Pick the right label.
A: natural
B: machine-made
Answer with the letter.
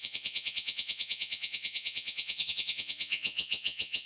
B